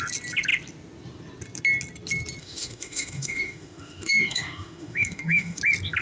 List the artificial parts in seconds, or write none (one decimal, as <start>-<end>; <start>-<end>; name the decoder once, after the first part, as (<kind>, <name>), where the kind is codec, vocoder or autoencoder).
2.4-5.6 (autoencoder, DAC-VAE)

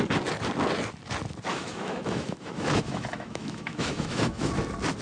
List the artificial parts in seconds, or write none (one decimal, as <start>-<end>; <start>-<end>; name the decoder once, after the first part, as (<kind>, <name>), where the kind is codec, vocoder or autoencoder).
1.5-4.5 (autoencoder, DAC-VAE)

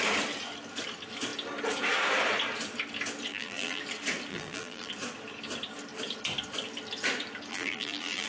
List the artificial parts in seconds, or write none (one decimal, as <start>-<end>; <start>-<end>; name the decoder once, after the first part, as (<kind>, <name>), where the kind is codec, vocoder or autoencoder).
3.3-3.8 (vocoder, BigVGAN v2); 4.3-4.9; 7.5-8.3

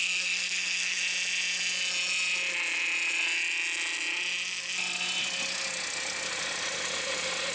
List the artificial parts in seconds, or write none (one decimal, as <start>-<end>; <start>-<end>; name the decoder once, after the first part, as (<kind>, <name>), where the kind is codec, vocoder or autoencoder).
0.0-1.0 (codec, SNAC)

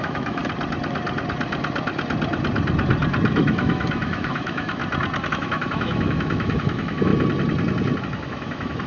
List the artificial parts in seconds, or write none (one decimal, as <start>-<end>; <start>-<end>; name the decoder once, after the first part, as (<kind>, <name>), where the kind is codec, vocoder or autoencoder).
0.0-0.4 (autoencoder, DAC-VAE); 3.3-4.8; 5.3-7.1; 8.0-8.9

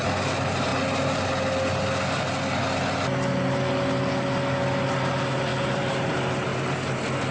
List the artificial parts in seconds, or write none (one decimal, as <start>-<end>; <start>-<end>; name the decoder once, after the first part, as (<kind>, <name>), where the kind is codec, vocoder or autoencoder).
5.5-6.1 (vocoder, BigVGAN v2)